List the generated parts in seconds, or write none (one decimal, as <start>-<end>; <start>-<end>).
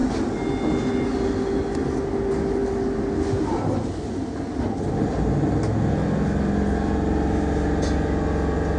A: none